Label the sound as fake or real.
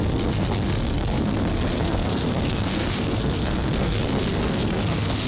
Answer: fake